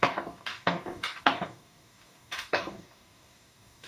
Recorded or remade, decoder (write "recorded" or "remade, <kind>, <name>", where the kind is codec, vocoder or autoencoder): remade, codec, DAC